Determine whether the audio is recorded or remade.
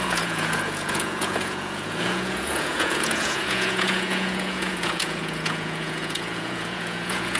remade